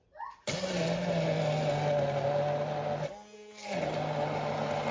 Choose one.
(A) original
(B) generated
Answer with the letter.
A